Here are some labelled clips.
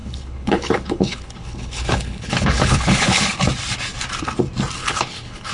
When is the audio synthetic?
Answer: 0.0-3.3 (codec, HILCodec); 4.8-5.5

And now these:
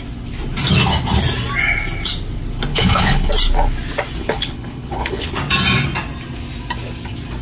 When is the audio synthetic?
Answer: 2.7-3.3 (codec, HILCodec); 4.2-5.4

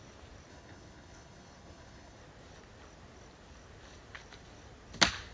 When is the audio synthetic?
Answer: 0.5-2.2 (codec, HILCodec)